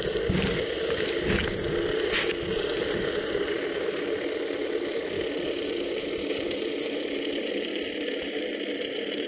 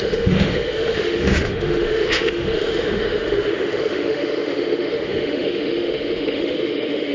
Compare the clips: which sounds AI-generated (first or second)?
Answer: second